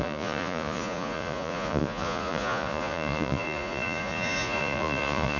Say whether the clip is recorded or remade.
remade